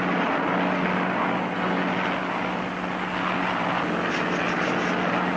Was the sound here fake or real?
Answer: real